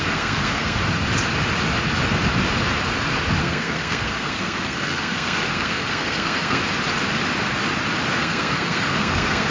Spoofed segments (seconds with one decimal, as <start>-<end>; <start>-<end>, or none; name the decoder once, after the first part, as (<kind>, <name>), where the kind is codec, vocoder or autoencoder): 0.0-0.8 (codec, SNAC); 3.4-6.6; 8.1-9.5